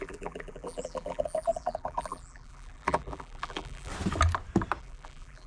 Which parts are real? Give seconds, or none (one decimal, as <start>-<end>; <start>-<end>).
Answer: 3.9-4.8